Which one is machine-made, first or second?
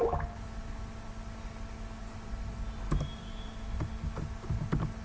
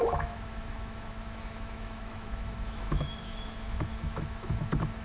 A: second